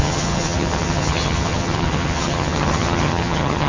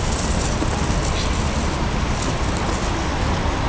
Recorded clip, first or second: second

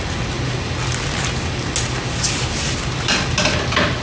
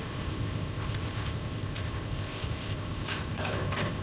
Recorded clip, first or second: first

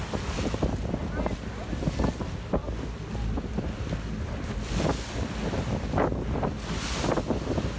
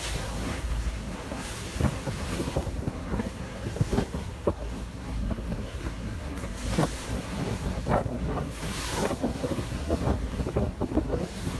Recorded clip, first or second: first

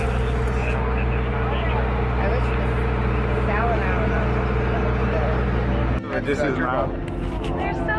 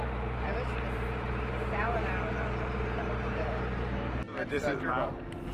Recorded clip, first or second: first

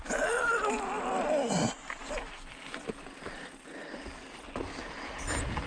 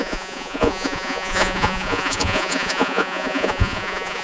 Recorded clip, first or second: first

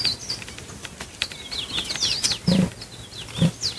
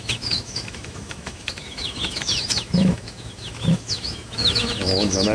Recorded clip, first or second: first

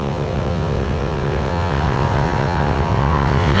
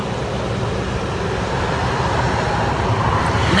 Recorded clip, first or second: second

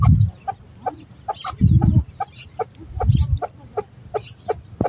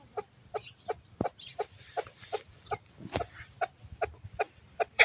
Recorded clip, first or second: first